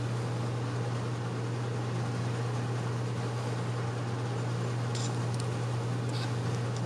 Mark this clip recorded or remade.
recorded